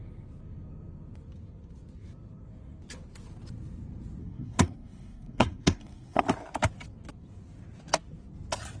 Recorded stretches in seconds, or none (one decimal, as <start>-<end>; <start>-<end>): 0.0-4.2; 6.2-8.8